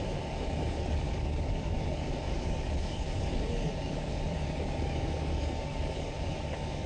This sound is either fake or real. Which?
fake